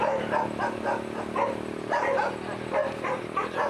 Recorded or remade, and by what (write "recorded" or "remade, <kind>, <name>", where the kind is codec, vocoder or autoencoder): recorded